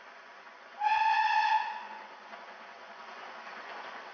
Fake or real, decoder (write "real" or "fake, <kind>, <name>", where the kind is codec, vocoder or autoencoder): fake, vocoder, Vocos